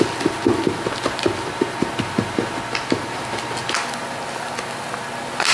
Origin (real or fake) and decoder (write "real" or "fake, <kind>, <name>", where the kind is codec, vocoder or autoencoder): real